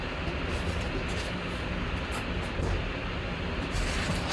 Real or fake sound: real